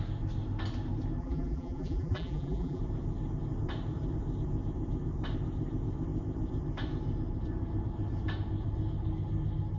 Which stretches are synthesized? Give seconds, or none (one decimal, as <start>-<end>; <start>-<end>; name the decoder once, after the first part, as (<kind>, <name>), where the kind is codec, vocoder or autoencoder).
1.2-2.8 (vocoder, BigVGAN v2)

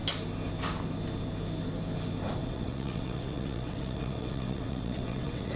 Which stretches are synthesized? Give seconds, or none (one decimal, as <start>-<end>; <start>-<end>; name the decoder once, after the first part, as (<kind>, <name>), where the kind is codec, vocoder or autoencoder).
2.4-5.6 (vocoder, WaveNeXt)

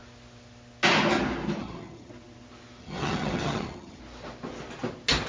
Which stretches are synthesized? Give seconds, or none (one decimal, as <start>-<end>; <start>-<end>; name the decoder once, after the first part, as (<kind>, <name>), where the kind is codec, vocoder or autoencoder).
1.6-2.1 (vocoder, HiFi-GAN); 2.8-4.0

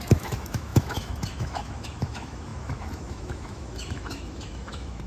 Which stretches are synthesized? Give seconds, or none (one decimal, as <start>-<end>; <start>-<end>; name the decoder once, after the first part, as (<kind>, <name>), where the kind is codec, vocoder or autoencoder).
0.0-5.1 (autoencoder, DAC-VAE)